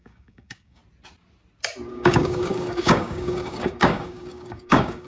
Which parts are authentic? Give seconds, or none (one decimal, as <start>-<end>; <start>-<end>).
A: 0.8-1.9